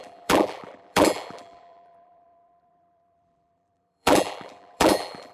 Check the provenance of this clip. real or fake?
fake